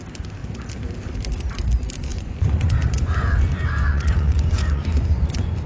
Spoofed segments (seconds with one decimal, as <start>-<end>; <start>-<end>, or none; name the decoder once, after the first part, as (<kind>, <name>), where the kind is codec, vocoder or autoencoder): 2.1-5.7 (vocoder, Vocos)